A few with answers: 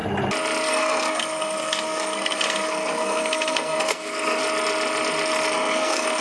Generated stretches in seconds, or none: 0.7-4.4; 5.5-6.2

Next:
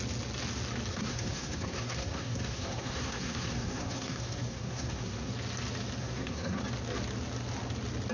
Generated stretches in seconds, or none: 0.9-5.3; 6.0-6.6

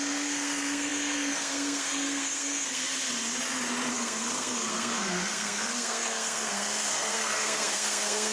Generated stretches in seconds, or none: 0.0-2.9; 3.9-8.3

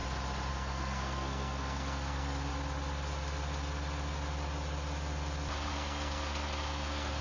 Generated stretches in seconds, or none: 0.5-2.5; 5.7-7.2

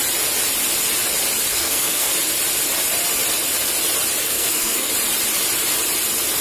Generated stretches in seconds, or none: 1.5-2.1; 4.2-4.9

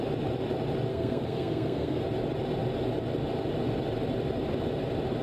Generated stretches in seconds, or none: 0.9-2.0

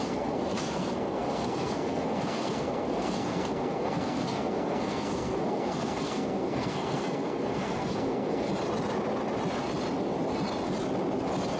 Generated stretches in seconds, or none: 0.0-8.5

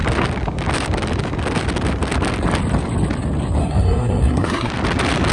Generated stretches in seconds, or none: 3.6-4.7